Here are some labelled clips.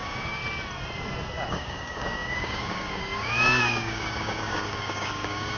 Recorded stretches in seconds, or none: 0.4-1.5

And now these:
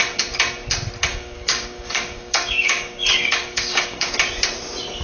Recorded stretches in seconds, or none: 0.0-1.1; 4.1-5.0

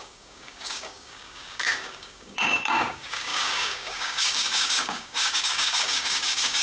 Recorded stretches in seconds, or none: none